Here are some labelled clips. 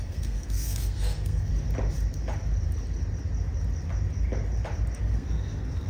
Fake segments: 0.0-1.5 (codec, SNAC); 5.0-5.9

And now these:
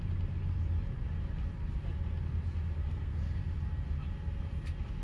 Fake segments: 2.8-3.4 (codec, SNAC)

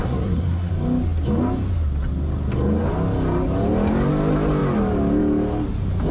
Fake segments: 0.0-0.7 (codec, SNAC)

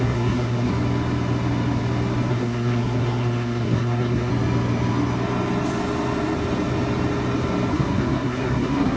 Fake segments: 0.0-0.7 (codec, SNAC); 2.3-4.3; 7.7-9.0

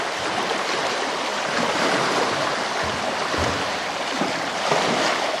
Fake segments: none

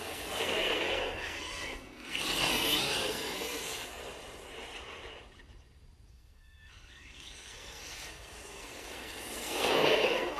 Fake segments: 0.0-4.0 (codec, SNAC); 6.1-10.4

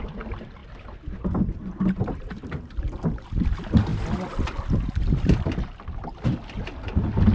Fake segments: none

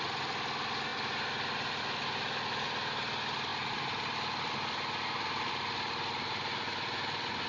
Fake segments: none